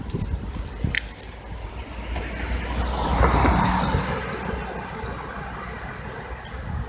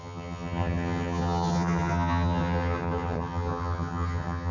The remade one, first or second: second